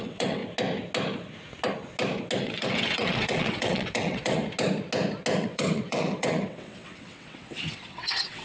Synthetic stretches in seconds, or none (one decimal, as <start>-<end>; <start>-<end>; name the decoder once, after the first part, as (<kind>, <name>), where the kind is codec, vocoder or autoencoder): 0.0-0.4 (vocoder, WaveNeXt); 2.4-4.4; 5.4-8.4